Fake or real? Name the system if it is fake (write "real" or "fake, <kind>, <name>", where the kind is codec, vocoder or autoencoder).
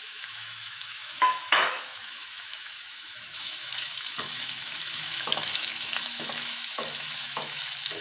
fake, autoencoder, DAC-VAE